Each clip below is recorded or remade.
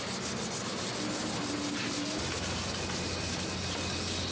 recorded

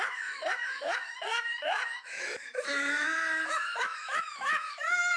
remade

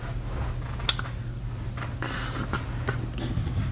recorded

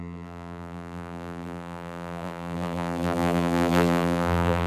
remade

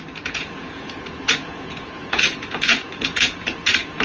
remade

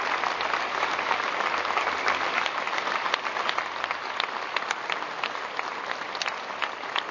recorded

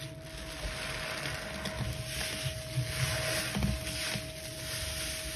recorded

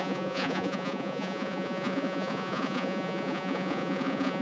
remade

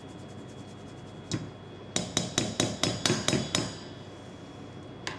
recorded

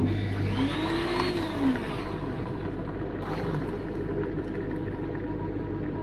recorded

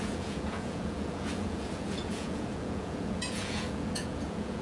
remade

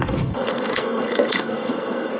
remade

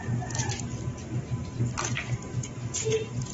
remade